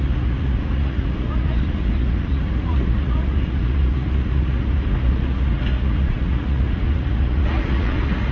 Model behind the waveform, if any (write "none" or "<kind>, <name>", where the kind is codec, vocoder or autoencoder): vocoder, Vocos